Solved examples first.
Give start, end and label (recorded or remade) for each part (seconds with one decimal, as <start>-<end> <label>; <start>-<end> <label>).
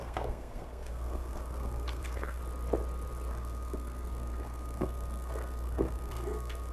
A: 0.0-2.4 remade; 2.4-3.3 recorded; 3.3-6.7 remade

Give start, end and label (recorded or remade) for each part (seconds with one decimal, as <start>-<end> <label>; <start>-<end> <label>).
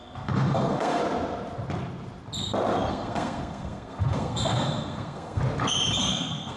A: 0.0-1.0 remade; 1.0-2.9 recorded; 2.9-5.4 remade; 5.4-6.0 recorded; 6.0-6.6 remade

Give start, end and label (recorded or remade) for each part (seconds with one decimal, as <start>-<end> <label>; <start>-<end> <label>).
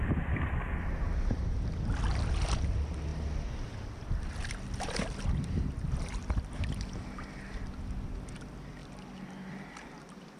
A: 0.0-10.4 recorded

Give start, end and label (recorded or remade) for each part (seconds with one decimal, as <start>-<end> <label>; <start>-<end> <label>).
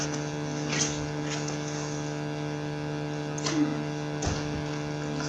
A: 0.0-5.3 recorded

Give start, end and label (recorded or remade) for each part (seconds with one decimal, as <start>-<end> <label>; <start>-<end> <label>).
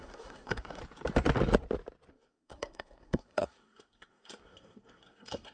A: 0.0-0.8 remade; 0.8-2.1 recorded; 2.1-5.5 remade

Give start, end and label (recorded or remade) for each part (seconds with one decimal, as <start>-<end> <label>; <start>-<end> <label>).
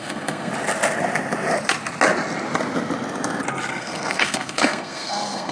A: 0.0-0.5 remade; 0.5-3.7 recorded; 3.7-5.5 remade